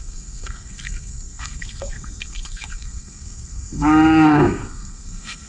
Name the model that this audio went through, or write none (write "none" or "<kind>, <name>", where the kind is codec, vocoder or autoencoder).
codec, SNAC